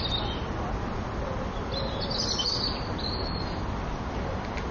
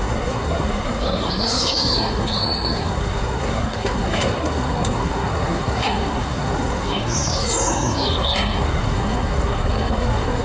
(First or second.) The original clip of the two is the first